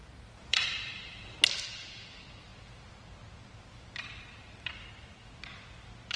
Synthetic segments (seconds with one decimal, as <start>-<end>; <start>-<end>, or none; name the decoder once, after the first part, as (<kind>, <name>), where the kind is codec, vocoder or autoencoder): 0.0-1.4 (vocoder, BigVGAN v2)